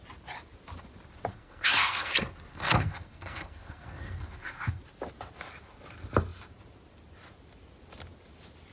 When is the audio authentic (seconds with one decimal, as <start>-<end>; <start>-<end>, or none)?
0.0-1.3; 2.1-2.5; 4.8-8.7